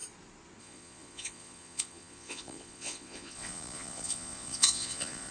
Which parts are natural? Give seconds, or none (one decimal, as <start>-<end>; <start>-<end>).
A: 0.0-0.6

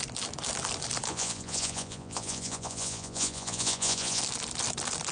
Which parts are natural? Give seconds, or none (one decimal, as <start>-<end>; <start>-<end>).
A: 0.0-1.1; 4.2-5.1